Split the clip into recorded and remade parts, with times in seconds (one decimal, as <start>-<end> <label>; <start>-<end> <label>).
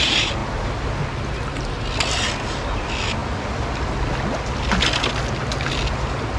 0.0-6.4 recorded